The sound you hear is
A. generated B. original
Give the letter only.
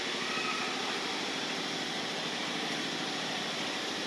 B